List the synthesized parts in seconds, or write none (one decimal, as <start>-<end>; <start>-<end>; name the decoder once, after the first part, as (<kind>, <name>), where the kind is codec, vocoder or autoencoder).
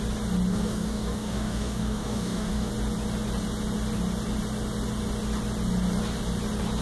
0.5-2.7 (codec, DAC)